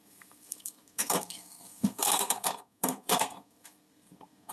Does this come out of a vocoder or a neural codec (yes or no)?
yes